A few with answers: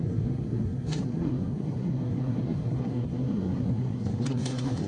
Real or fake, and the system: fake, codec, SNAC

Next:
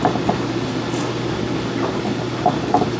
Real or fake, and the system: fake, vocoder, BigVGAN v2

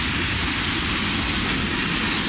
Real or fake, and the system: real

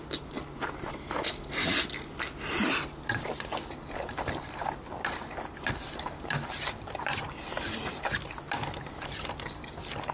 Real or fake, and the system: fake, vocoder, BigVGAN v2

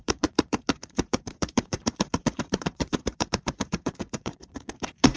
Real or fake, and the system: fake, vocoder, Vocos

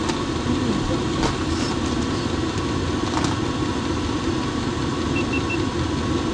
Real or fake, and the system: real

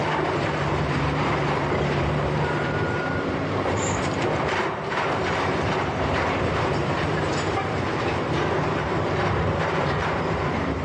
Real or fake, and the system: fake, vocoder, BigVGAN v2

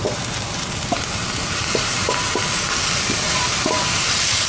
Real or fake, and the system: fake, vocoder, BigVGAN v2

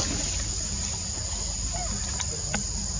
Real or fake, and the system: real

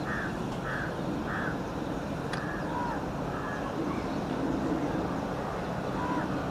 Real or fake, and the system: real